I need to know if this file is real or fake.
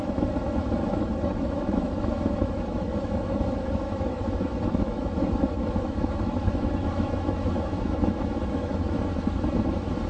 fake